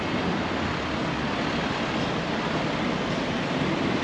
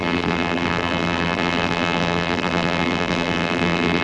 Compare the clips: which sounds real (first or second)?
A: first